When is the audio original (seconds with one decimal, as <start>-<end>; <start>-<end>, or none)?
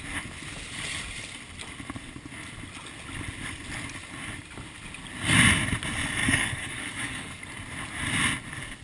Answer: 0.0-6.2; 7.4-8.8